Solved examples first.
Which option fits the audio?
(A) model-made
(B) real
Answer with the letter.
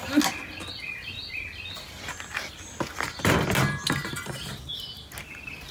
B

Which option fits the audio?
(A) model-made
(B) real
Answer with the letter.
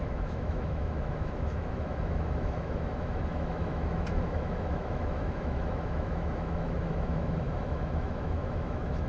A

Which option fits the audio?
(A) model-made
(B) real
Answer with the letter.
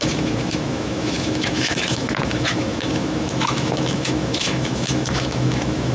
A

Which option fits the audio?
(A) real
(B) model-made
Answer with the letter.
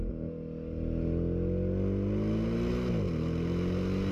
A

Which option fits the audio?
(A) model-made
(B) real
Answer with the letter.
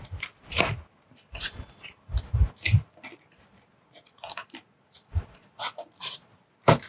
B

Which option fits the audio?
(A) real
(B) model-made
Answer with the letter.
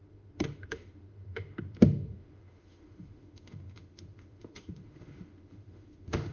B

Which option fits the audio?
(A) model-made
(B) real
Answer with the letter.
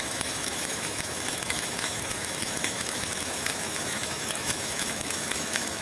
A